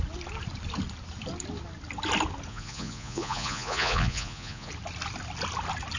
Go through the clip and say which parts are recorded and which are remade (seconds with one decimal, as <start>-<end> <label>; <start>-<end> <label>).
0.0-2.5 recorded; 2.5-4.7 remade; 4.7-6.0 recorded